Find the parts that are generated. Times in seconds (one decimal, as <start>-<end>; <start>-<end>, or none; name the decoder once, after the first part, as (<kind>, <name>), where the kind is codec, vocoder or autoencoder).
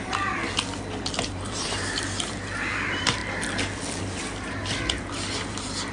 0.0-0.4 (vocoder, BigVGAN v2); 1.0-3.2; 4.0-4.6; 5.5-5.9